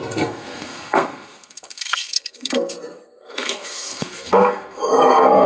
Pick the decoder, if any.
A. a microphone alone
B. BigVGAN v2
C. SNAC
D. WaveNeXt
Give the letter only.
C